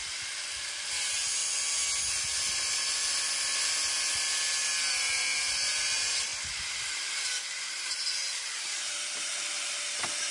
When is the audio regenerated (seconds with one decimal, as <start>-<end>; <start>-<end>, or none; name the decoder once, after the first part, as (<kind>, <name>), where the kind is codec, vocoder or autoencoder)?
0.5-1.4 (vocoder, BigVGAN v2); 4.9-6.3; 7.6-10.3